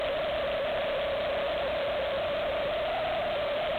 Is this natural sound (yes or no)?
yes